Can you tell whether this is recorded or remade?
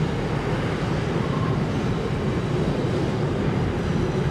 recorded